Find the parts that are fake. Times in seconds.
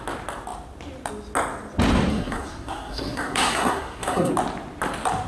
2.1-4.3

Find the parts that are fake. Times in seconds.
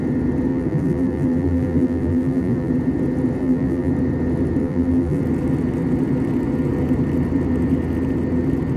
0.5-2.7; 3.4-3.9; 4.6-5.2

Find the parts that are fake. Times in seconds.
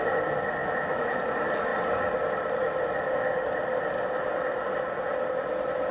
0.6-1.2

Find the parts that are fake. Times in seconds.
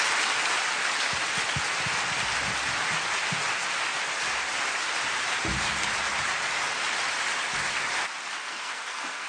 8.4-9.3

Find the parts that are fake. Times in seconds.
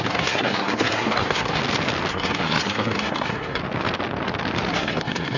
0.0-1.6; 2.1-3.6; 4.7-5.4